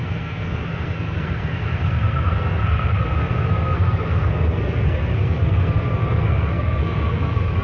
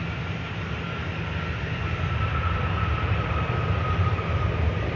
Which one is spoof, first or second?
first